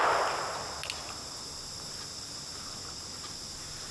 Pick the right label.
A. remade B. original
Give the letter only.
B